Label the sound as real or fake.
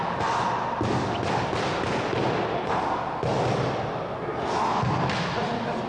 real